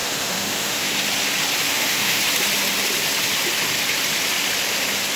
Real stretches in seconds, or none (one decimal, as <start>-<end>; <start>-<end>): 0.9-1.7; 2.2-5.2